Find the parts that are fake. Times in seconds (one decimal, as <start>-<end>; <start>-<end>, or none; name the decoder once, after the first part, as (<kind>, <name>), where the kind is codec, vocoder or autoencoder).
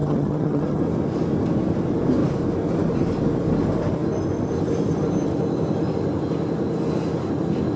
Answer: 0.0-0.8 (vocoder, HiFi-GAN)